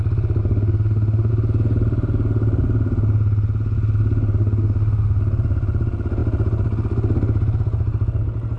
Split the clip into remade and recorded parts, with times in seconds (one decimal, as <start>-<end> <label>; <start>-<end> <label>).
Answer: 0.0-0.4 recorded; 0.4-1.3 remade; 1.3-4.4 recorded; 4.4-5.2 remade; 5.2-8.6 recorded